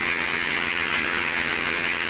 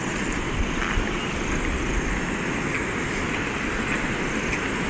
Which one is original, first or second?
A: second